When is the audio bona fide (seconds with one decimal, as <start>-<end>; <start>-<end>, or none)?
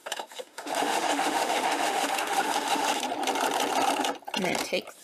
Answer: 3.0-5.0